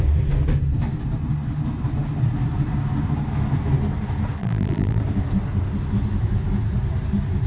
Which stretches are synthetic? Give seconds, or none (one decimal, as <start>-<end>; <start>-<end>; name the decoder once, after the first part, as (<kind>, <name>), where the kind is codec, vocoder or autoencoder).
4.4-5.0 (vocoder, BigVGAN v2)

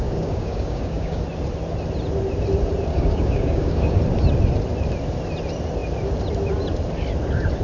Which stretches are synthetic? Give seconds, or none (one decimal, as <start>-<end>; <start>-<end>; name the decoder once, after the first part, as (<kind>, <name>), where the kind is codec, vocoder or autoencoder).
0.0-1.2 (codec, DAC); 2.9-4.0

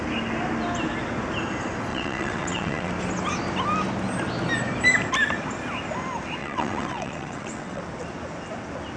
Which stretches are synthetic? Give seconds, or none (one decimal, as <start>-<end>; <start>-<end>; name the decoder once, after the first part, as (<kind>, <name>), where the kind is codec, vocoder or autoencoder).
1.9-2.9 (vocoder, WaveNeXt); 6.4-7.8

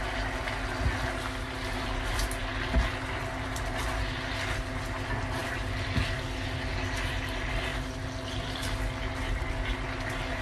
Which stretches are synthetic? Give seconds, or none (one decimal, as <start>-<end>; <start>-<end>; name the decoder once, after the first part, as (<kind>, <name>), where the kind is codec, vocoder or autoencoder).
none